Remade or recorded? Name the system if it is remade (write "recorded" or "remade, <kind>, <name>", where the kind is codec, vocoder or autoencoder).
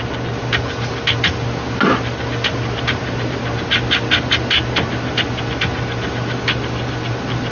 recorded